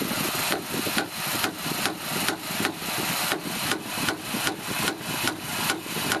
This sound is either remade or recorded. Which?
recorded